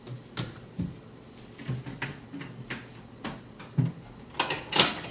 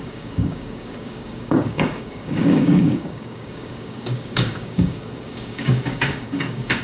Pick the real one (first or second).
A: first